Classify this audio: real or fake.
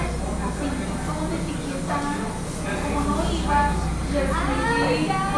real